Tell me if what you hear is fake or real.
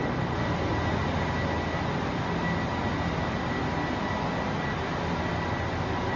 real